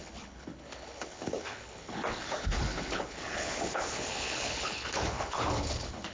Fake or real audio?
fake